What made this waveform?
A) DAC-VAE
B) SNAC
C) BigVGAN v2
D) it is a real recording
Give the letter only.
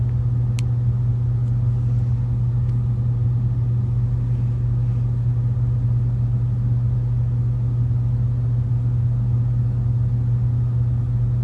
D